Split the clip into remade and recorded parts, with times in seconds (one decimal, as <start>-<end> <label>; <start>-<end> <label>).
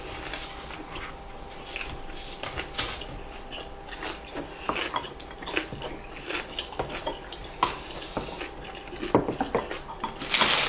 0.0-10.7 recorded